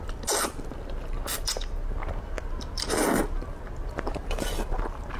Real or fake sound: real